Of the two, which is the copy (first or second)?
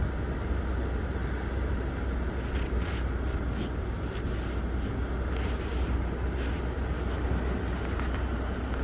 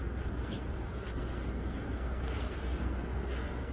second